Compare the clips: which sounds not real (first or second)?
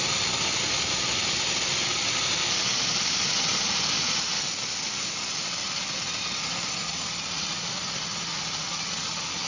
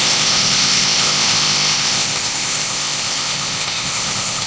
second